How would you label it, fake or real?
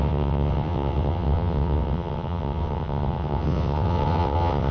fake